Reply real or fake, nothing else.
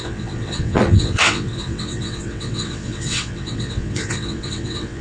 fake